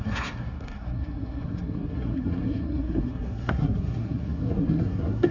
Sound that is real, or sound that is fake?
fake